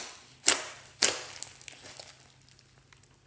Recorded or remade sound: recorded